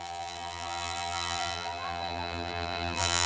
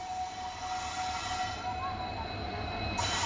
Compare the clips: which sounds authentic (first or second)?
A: second